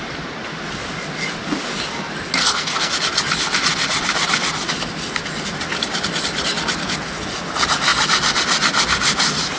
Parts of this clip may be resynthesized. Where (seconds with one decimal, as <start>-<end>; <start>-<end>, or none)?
2.4-2.9